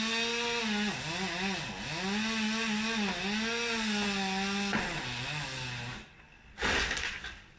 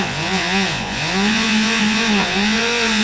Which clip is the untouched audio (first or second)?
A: first